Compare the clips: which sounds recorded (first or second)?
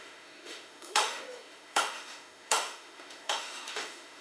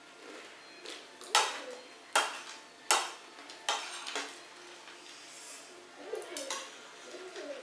second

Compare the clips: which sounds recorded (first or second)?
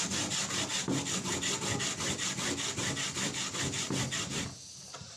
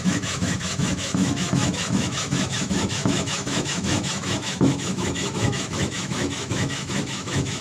first